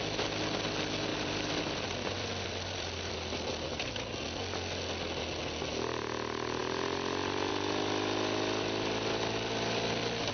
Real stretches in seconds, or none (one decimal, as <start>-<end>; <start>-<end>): 0.0-1.1; 3.1-6.6; 7.5-10.3